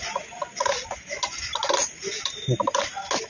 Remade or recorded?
recorded